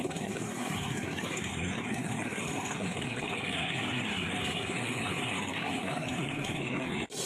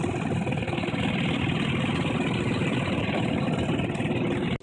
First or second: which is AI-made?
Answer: first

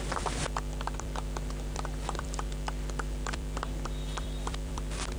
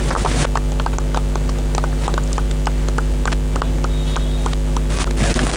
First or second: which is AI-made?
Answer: first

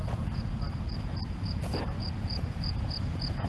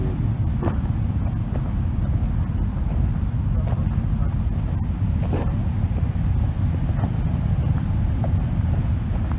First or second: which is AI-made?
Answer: first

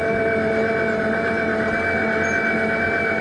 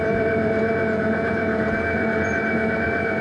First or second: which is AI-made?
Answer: second